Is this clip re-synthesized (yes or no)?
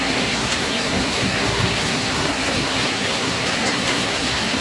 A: yes